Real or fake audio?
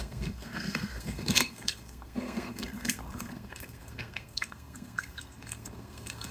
fake